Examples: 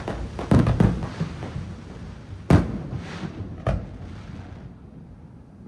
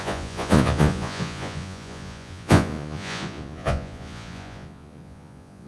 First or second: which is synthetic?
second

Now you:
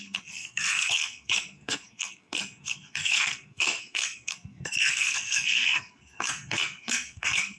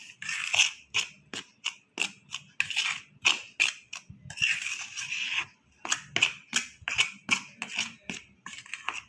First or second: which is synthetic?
first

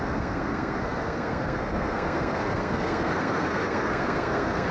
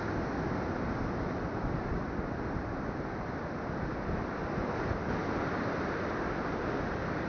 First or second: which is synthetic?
first